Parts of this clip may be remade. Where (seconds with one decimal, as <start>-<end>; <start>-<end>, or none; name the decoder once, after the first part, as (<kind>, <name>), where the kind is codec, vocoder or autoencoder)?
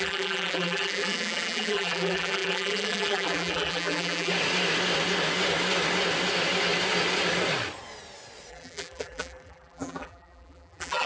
0.0-4.3 (vocoder, BigVGAN v2); 8.5-11.1